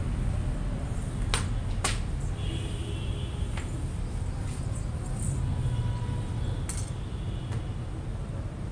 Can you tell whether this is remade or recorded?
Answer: recorded